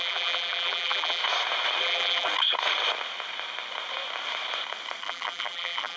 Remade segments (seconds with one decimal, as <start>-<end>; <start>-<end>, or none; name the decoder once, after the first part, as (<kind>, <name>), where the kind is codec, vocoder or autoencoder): 0.0-1.2 (vocoder, BigVGAN v2); 1.8-2.3; 5.0-6.0